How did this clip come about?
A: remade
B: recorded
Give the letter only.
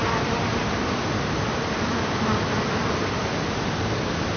B